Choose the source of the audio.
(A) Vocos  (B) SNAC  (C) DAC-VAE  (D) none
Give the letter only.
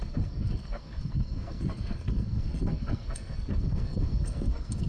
B